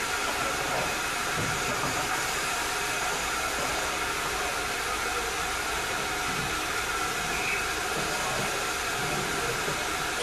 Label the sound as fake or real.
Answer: real